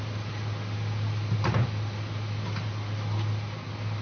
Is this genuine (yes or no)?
yes